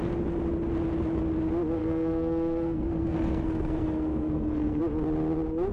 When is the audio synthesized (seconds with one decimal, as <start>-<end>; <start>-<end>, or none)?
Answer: 1.8-4.8